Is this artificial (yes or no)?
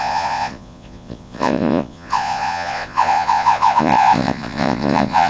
yes